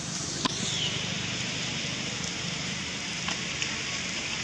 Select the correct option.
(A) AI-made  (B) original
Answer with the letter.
B